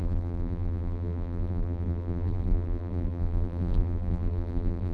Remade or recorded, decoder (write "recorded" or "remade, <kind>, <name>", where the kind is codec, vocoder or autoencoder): remade, vocoder, BigVGAN v2